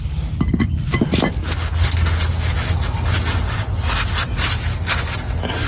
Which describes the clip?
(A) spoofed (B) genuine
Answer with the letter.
B